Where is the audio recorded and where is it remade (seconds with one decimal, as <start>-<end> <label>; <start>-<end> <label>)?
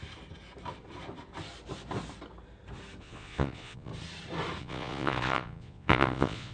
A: 0.0-3.0 recorded; 3.0-3.9 remade; 3.9-4.6 recorded; 4.6-6.5 remade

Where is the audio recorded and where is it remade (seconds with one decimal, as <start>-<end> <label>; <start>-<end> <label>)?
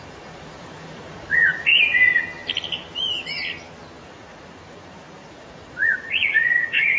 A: 0.0-1.7 remade; 1.7-4.0 recorded; 4.0-7.0 remade